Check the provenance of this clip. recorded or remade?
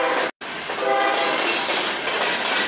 recorded